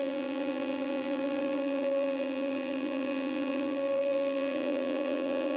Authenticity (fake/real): fake